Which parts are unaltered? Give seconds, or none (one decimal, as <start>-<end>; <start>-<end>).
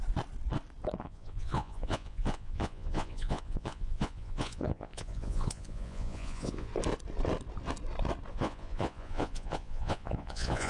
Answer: 0.0-1.0; 6.7-8.3